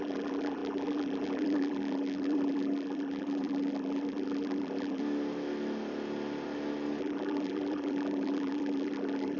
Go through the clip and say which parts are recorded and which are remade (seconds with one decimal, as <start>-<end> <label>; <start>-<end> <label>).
0.0-5.0 remade; 5.0-7.0 recorded; 7.0-9.4 remade